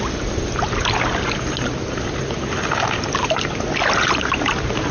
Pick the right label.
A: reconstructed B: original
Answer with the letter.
B